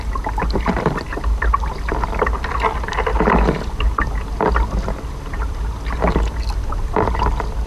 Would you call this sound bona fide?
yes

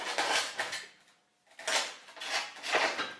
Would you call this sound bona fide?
yes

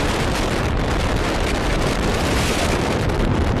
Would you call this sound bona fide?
no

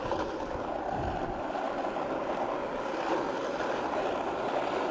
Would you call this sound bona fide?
yes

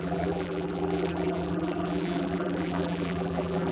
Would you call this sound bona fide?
no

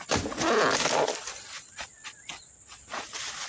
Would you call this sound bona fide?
yes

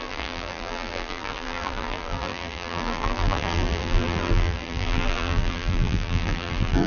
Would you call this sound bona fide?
no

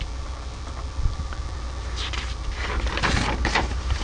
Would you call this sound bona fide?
no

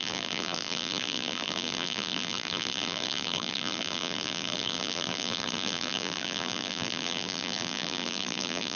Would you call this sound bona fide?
no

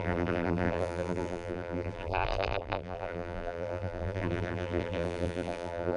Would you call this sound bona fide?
no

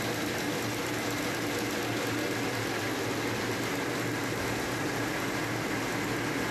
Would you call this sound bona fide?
yes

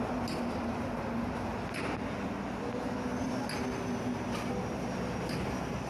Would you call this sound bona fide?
yes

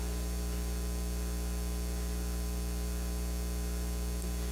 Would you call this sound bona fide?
no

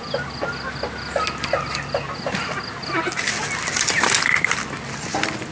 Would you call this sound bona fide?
yes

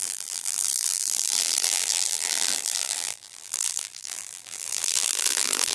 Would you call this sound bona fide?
no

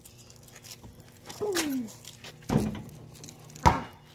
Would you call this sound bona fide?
yes